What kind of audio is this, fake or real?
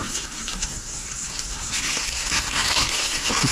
fake